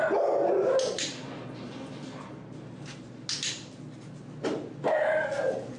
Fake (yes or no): no